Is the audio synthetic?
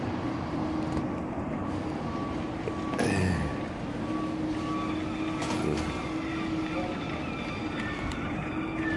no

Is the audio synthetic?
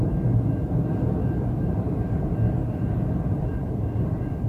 yes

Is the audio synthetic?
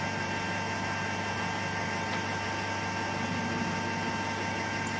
no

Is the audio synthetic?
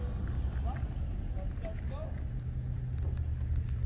no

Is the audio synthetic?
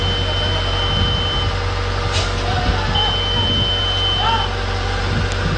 no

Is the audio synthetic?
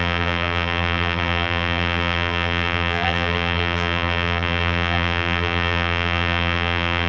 yes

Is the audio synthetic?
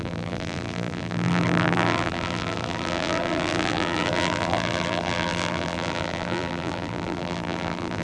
yes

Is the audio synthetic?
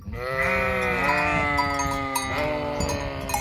no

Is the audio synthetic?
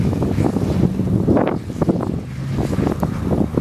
no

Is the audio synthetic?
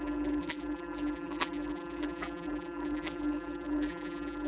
yes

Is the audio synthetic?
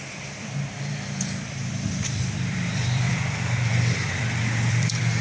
yes